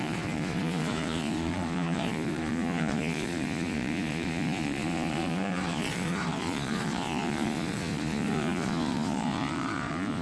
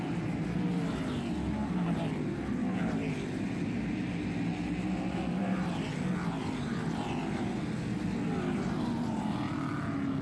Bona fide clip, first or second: second